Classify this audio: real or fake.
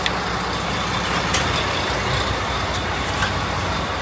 real